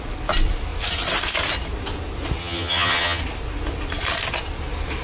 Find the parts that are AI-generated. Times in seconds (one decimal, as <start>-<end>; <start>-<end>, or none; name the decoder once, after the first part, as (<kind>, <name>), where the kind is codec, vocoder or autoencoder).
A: 2.4-3.2 (vocoder, HiFi-GAN)